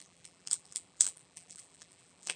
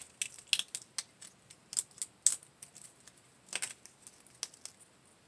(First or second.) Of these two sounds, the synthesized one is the first